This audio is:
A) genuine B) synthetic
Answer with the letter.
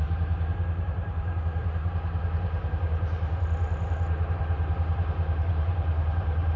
B